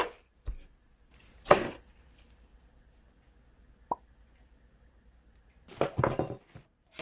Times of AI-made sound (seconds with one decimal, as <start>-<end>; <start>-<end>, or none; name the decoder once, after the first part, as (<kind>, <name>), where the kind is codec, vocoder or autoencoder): none